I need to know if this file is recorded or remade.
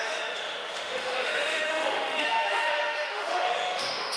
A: remade